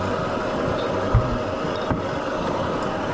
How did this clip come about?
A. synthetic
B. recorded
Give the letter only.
B